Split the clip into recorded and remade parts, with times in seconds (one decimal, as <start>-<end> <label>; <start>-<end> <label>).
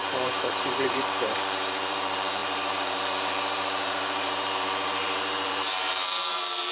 0.0-6.7 remade